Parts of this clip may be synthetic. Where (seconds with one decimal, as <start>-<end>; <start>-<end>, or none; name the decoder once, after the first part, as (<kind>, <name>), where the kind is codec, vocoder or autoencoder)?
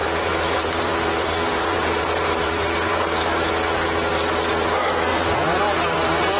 0.0-3.5 (vocoder, BigVGAN v2); 5.1-5.6